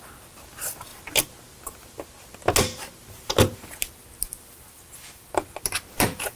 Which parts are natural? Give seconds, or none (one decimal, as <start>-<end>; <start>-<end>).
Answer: 0.0-6.4